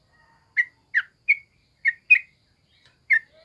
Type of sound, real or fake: real